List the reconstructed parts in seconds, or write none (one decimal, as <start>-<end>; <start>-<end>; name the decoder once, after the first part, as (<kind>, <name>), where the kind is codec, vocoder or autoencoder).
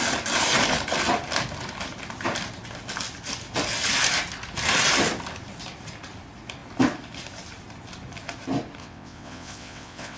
8.8-10.2 (vocoder, WaveNeXt)